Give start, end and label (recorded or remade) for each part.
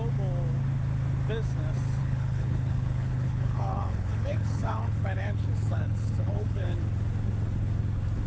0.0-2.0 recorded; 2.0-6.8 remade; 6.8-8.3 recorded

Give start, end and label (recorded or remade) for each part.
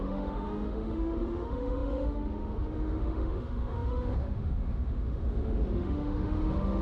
0.0-6.8 remade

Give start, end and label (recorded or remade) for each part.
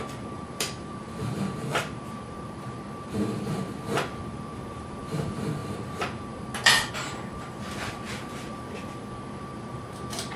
0.0-10.4 remade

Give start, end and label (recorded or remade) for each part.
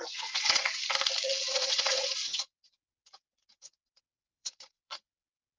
0.0-0.8 remade; 0.8-1.4 recorded; 1.4-5.6 remade